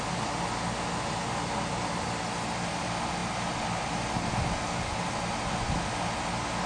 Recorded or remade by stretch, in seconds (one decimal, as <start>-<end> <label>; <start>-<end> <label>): 0.0-6.7 recorded